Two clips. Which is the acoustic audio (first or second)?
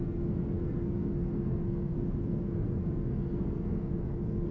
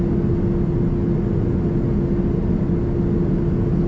second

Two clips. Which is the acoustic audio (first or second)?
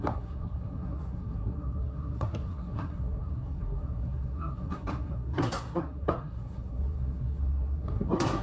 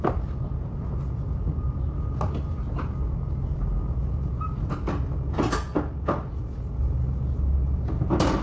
second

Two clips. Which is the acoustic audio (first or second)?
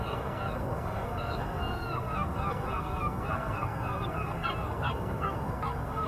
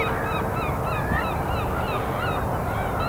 second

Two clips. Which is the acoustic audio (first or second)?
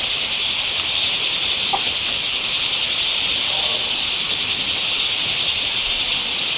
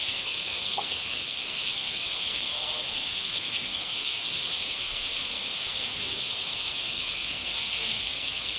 first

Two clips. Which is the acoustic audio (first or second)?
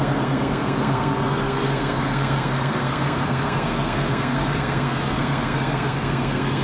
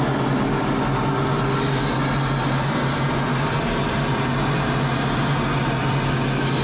second